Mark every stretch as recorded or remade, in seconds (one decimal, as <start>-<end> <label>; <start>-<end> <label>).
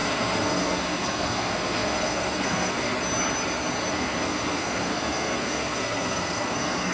0.0-2.9 remade; 2.9-3.9 recorded; 3.9-6.9 remade